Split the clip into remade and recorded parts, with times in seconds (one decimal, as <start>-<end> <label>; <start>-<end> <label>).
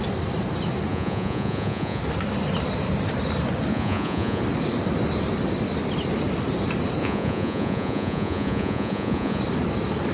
0.0-0.9 recorded; 0.9-2.0 remade; 2.0-3.7 recorded; 3.7-4.4 remade; 4.4-7.0 recorded; 7.0-9.4 remade; 9.4-10.1 recorded